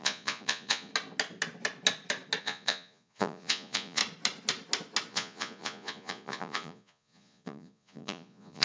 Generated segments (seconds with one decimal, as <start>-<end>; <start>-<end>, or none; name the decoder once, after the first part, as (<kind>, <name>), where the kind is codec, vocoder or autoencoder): 0.0-0.9 (vocoder, Vocos); 2.4-4.0; 5.1-8.6